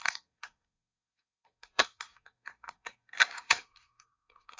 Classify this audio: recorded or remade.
remade